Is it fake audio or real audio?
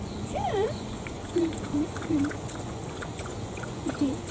fake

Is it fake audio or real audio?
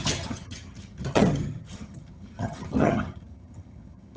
fake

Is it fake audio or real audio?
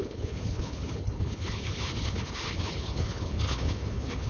fake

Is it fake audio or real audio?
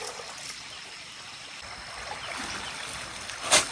real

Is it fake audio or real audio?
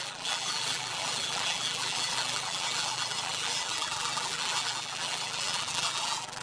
fake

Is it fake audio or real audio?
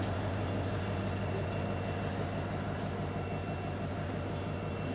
real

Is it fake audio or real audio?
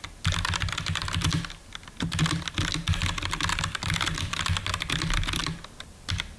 real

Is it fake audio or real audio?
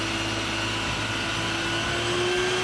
real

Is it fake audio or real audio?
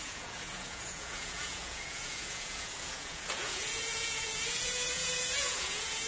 fake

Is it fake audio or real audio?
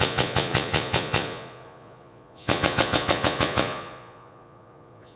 fake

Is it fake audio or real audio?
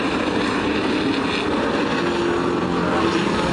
real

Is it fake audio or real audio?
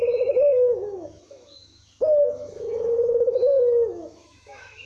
fake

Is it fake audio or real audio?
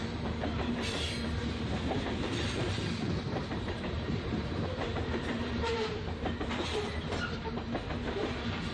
fake